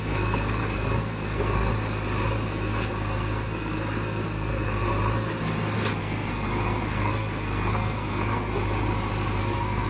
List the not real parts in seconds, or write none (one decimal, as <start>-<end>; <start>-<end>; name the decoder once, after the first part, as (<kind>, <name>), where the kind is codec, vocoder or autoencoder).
0.0-1.7 (codec, SNAC); 2.5-4.9; 6.0-8.5; 9.4-9.9